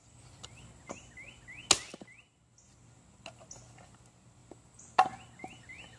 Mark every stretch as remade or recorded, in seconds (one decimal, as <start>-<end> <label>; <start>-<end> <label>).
0.0-4.4 recorded; 4.4-5.2 remade; 5.2-6.0 recorded